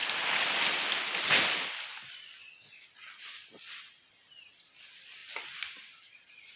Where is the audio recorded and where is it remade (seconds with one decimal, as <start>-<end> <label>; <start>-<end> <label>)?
0.0-5.2 recorded; 5.2-6.6 remade